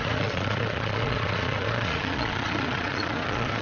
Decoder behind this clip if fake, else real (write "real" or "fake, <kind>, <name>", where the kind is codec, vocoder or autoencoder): fake, vocoder, Vocos